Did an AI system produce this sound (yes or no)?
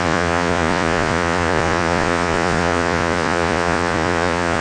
yes